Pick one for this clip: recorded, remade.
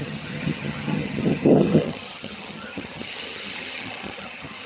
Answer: remade